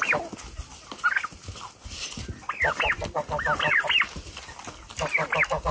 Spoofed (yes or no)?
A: no